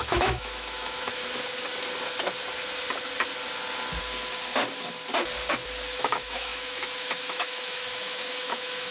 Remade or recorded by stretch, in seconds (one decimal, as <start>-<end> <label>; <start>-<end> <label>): 0.0-1.2 remade; 1.2-6.0 recorded; 6.0-8.9 remade